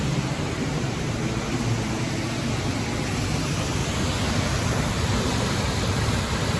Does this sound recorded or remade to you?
recorded